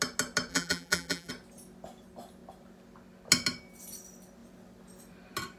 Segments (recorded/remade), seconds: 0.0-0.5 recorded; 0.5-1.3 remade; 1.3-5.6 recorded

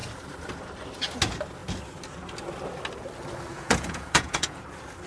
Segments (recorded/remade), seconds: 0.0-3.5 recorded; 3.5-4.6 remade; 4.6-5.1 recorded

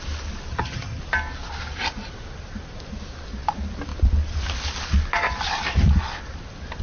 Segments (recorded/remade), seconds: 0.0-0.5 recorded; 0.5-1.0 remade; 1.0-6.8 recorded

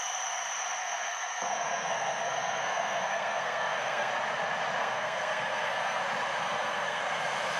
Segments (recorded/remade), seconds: 0.0-0.8 recorded; 0.8-4.1 remade; 4.1-4.8 recorded; 4.8-6.0 remade; 6.0-6.4 recorded; 6.4-7.0 remade; 7.0-7.6 recorded

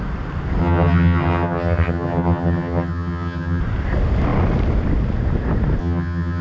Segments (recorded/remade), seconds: 0.0-0.6 recorded; 0.6-3.6 remade; 3.6-5.8 recorded; 5.8-6.4 remade